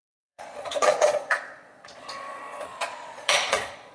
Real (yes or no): no